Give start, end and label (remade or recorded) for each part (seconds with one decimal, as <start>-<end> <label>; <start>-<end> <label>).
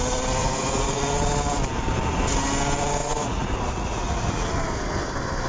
0.0-0.4 recorded; 0.4-1.0 remade; 1.0-3.0 recorded; 3.0-4.5 remade; 4.5-5.5 recorded